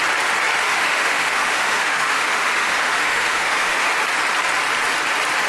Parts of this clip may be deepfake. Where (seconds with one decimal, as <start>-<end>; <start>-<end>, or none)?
0.6-3.9